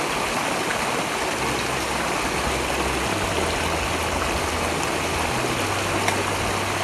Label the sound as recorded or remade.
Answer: recorded